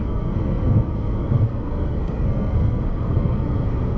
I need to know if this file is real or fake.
fake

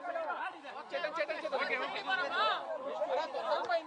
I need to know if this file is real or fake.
real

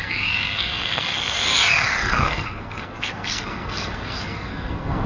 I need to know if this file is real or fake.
fake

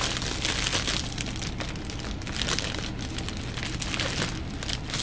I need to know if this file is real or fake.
real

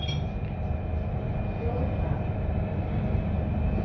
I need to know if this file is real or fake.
real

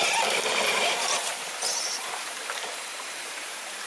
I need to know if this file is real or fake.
fake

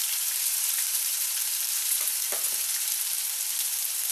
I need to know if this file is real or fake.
fake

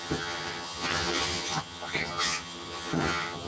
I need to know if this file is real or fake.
fake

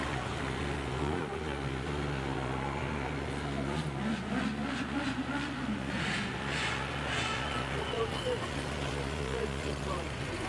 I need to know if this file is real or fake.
fake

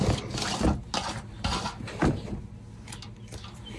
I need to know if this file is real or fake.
real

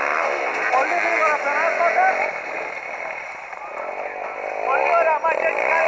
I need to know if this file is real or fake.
real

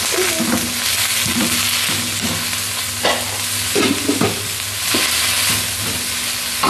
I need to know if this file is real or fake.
real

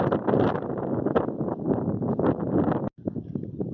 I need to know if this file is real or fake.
real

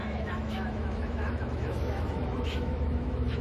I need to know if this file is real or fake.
fake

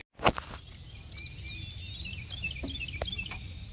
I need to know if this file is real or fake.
real